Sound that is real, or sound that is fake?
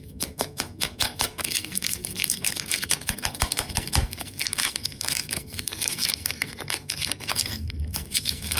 fake